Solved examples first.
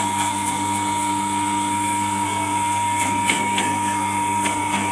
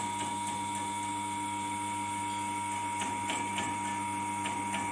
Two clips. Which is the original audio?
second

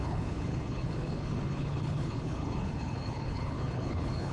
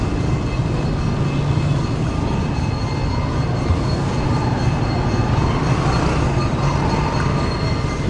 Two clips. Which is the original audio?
second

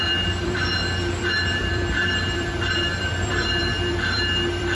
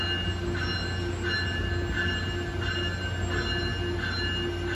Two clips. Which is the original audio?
second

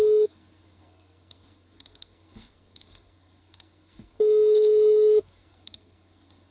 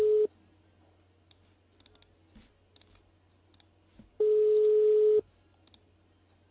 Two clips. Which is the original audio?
second